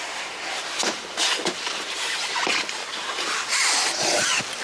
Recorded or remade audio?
recorded